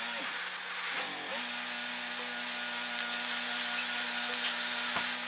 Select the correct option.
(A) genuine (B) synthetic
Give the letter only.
A